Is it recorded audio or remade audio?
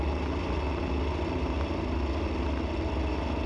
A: recorded